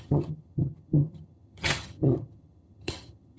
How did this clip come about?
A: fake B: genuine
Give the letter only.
A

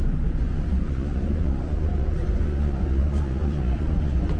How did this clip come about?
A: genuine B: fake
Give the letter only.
B